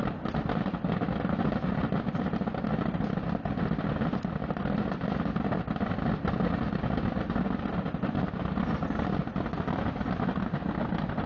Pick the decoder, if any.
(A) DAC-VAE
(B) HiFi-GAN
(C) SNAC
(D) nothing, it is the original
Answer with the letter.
D